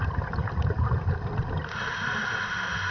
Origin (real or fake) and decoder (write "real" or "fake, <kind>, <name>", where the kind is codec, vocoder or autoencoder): real